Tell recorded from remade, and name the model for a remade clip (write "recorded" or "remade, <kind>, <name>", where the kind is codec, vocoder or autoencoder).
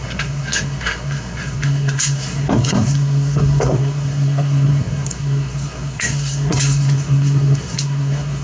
remade, codec, SNAC